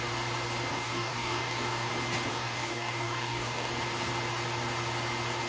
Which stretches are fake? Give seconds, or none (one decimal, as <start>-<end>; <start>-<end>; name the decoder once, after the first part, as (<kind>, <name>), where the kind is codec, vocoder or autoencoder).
0.7-1.9 (codec, DAC); 2.3-3.7